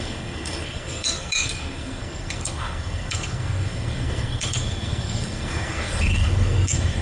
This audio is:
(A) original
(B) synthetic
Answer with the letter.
B